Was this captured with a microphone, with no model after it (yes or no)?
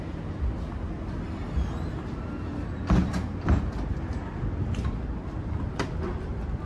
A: yes